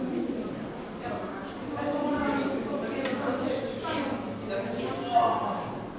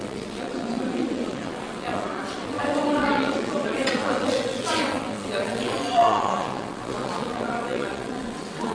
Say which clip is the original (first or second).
first